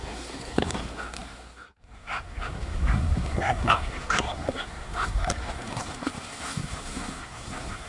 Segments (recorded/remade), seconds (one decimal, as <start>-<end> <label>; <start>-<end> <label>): 0.0-7.9 remade